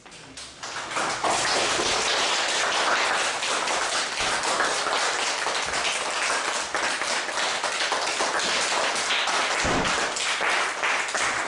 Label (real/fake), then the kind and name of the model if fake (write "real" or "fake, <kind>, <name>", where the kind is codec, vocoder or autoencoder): real